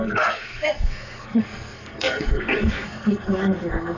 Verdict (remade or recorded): remade